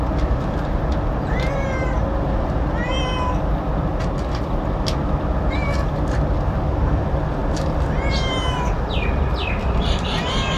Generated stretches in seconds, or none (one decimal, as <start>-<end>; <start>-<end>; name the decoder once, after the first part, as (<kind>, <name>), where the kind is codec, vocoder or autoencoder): none